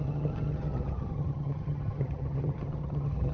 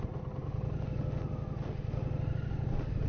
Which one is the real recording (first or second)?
second